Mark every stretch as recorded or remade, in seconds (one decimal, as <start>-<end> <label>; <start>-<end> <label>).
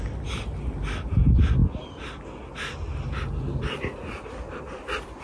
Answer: 0.0-5.2 recorded